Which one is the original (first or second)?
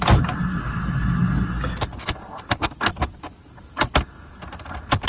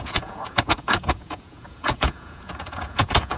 first